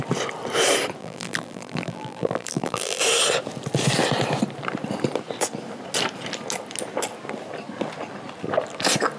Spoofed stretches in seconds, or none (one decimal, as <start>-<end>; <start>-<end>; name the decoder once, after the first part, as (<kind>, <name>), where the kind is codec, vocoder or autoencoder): 1.0-3.0 (vocoder, BigVGAN v2)